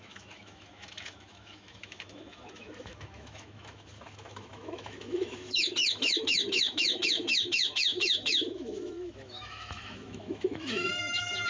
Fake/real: fake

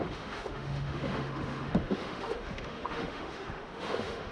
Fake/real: fake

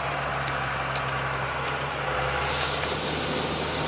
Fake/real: real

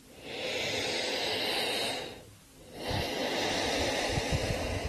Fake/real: real